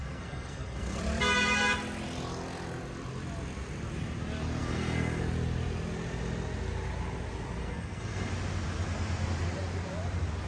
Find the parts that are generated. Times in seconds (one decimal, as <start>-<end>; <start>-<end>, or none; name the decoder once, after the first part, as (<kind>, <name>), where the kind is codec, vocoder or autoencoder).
0.0-1.0 (codec, SNAC); 4.6-5.2; 7.6-8.3